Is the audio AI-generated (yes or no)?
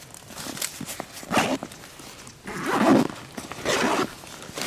no